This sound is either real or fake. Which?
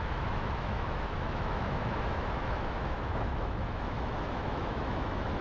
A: fake